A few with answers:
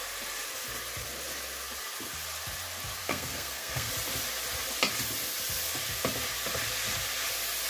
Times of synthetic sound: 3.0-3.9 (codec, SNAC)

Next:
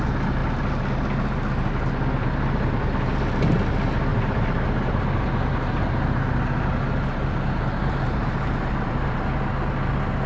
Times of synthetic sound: 4.1-4.8 (vocoder, BigVGAN v2); 8.2-9.2

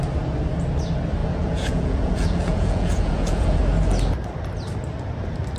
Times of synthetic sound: 1.2-3.6 (vocoder, Vocos)

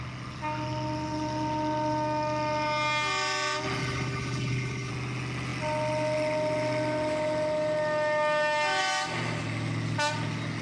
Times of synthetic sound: 3.8-4.9 (codec, HILCodec)

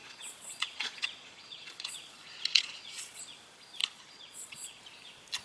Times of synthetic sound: 0.0-3.2 (vocoder, Vocos); 3.8-4.8

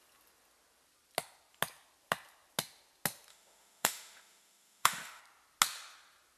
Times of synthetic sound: 3.3-5.2 (autoencoder, DAC-VAE)

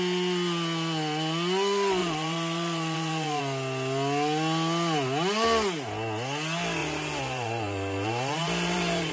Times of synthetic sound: 2.0-3.4 (vocoder, BigVGAN v2); 6.8-9.1